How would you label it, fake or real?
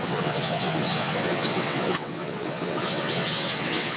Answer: fake